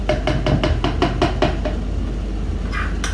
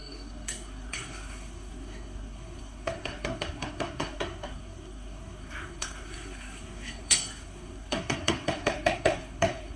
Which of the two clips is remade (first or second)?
second